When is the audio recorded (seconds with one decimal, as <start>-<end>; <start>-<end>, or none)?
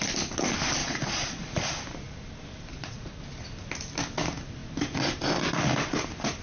0.0-0.8; 1.7-2.7; 3.2-6.4